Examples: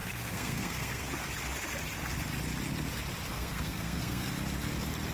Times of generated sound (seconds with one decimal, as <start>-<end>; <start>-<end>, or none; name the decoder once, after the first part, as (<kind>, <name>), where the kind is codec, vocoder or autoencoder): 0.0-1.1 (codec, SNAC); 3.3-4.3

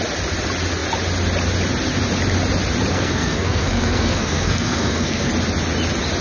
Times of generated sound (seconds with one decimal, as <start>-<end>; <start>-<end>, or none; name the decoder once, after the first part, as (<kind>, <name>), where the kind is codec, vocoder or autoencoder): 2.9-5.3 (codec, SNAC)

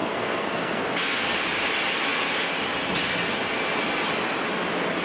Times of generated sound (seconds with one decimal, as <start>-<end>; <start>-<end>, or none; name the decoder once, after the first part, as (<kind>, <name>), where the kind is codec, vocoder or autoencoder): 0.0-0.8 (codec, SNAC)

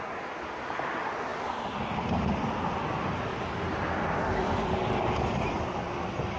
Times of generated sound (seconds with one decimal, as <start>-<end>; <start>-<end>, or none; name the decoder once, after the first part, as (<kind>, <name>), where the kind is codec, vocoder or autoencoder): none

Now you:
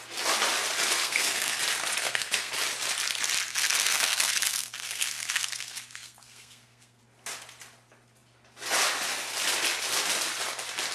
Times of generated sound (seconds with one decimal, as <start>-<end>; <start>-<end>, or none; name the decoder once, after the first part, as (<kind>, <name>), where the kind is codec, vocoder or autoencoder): 1.0-1.6 (codec, SNAC); 2.0-2.5; 3.5-7.0

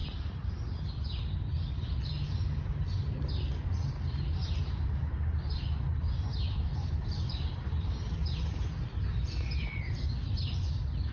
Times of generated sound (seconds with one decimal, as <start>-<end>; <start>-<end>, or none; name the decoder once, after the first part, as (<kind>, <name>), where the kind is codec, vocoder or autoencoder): none

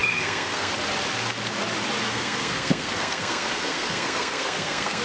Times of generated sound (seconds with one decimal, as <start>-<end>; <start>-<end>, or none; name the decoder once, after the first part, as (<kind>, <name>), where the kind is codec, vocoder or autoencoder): 0.0-0.7 (codec, SNAC); 2.0-5.0

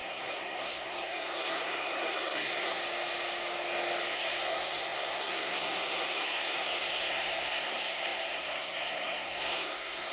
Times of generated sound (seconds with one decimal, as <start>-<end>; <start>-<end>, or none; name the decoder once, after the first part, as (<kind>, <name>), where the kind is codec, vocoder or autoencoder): 0.0-2.8 (codec, SNAC); 4.1-10.1